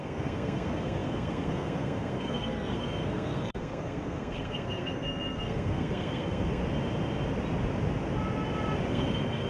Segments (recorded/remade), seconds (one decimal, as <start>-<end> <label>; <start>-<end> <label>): 0.0-6.6 remade; 6.6-8.9 recorded; 8.9-9.5 remade